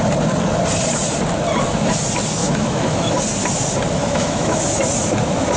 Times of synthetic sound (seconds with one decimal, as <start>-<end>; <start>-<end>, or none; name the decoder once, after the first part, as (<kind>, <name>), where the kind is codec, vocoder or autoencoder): 2.4-3.1 (autoencoder, DAC-VAE); 4.0-4.6